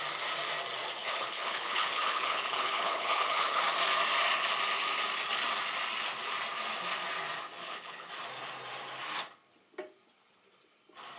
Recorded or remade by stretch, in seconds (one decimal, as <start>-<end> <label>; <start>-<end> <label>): 0.0-1.0 recorded; 1.0-3.6 remade; 3.6-7.6 recorded; 7.6-8.1 remade; 8.1-11.2 recorded